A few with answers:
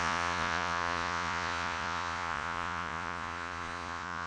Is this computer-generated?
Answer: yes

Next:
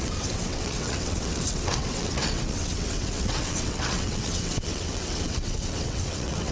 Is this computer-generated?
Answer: yes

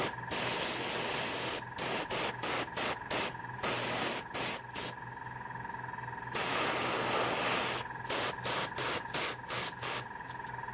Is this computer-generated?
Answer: no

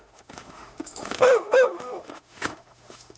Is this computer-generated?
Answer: yes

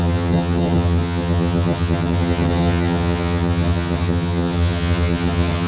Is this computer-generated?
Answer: yes